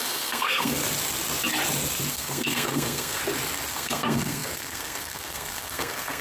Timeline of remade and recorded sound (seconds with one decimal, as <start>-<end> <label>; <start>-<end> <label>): 0.0-0.8 remade; 0.8-2.1 recorded; 2.1-3.2 remade; 3.2-3.7 recorded; 3.7-6.2 remade